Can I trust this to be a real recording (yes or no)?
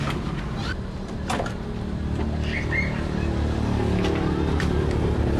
yes